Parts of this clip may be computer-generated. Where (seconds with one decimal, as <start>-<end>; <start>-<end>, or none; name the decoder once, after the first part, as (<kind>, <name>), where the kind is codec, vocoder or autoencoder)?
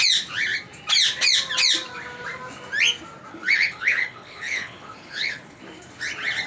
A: 3.3-5.6 (codec, HILCodec)